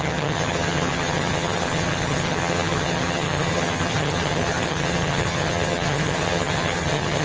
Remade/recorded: remade